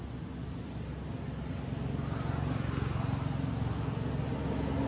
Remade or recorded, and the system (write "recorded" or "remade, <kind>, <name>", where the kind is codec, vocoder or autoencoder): recorded